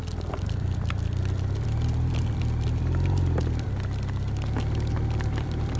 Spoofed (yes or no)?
yes